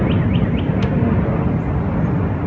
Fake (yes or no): no